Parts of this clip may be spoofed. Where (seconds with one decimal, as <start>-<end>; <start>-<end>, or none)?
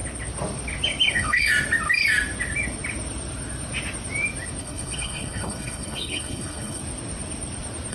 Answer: 1.1-1.5; 4.6-6.8